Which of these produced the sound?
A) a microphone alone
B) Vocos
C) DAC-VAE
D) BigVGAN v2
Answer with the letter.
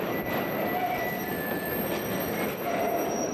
A